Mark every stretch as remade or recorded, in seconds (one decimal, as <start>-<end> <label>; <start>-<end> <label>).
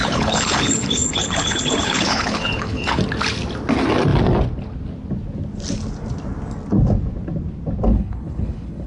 0.0-3.0 remade; 3.0-7.9 recorded; 7.9-8.9 remade